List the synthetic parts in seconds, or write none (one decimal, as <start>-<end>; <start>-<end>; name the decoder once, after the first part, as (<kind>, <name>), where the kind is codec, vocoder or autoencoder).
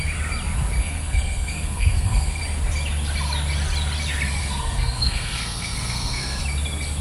0.8-2.4 (codec, SNAC); 4.4-6.4